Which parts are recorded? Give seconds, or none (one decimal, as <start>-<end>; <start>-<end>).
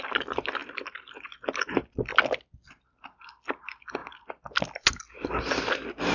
0.0-6.1